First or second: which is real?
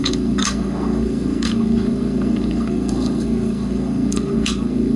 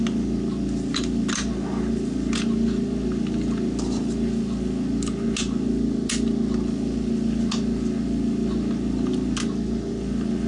second